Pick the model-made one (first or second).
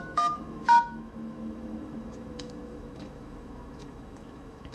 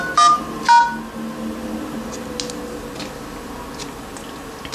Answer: first